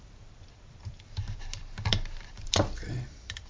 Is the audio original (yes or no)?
no